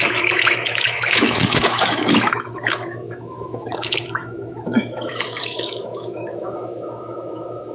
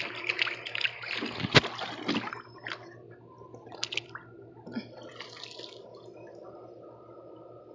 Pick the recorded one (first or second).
second